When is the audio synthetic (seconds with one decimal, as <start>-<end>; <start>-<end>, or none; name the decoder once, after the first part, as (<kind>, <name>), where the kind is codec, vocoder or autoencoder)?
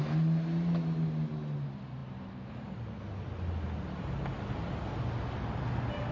none